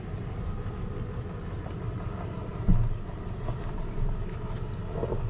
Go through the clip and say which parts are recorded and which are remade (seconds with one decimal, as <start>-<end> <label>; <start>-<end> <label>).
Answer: 0.0-5.3 recorded